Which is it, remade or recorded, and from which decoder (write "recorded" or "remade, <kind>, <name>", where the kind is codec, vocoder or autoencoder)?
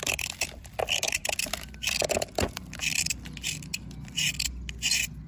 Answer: recorded